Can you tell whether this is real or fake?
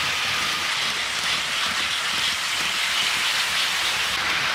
real